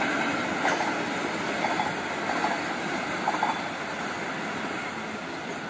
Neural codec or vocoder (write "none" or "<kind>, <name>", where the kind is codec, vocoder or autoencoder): none